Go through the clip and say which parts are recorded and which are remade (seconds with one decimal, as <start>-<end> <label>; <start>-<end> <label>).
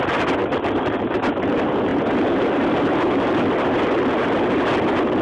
0.0-0.4 recorded; 0.4-1.0 remade; 1.0-1.9 recorded; 1.9-4.7 remade; 4.7-5.2 recorded